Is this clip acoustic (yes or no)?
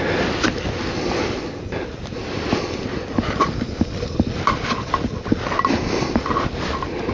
yes